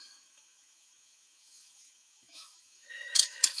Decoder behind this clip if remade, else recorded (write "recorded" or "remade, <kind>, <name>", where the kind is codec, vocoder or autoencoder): remade, autoencoder, DAC-VAE